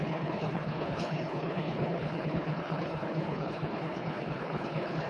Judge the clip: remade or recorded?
remade